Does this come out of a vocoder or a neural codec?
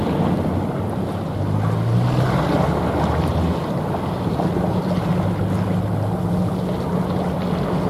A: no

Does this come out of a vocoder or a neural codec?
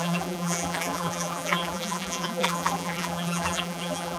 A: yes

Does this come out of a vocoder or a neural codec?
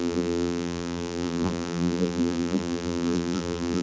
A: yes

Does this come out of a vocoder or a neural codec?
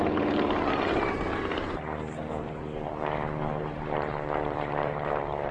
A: yes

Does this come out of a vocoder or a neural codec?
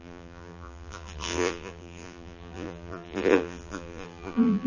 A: yes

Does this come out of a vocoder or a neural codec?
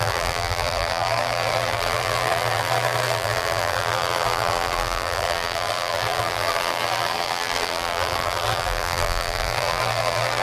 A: yes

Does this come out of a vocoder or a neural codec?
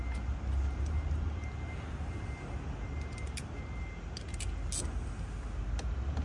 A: no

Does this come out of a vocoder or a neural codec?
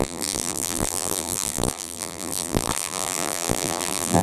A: yes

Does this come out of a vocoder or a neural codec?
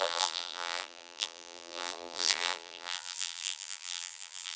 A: yes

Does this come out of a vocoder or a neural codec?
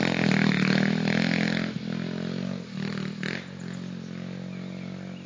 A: no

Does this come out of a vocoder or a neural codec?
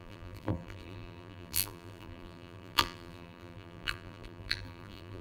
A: yes